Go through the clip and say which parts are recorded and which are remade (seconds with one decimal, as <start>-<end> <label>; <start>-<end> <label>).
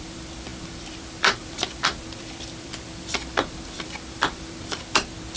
0.0-5.4 remade